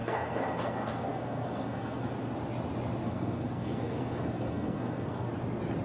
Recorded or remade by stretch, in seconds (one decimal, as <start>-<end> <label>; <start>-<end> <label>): 0.0-2.1 remade; 2.1-3.0 recorded; 3.0-5.3 remade; 5.3-5.8 recorded